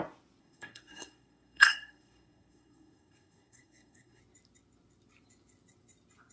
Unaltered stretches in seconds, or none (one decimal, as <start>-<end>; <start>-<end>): 0.0-0.4; 4.2-6.3